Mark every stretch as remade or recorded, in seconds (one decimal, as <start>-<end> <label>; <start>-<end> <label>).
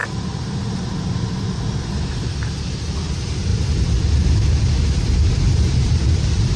0.0-2.7 recorded; 2.7-3.5 remade; 3.5-5.7 recorded; 5.7-6.6 remade